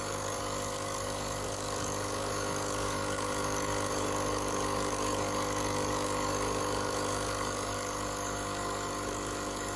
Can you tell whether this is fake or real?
fake